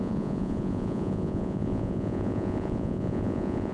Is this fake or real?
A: fake